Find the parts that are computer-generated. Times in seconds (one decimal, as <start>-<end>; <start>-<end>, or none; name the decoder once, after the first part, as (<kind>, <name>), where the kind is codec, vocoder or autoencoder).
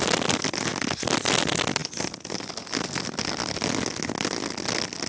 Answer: none